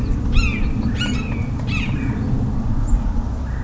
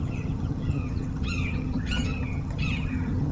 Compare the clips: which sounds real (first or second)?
first